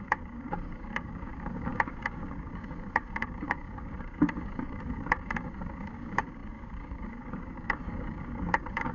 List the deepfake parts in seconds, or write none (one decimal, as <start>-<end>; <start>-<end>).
0.0-8.9

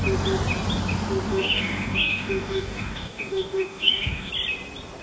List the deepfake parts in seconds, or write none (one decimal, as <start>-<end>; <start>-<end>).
1.3-4.3